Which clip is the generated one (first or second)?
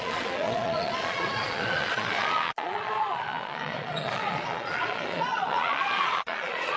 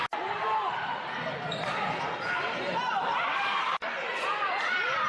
first